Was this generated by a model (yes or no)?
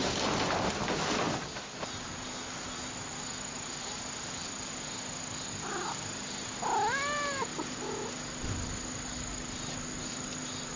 no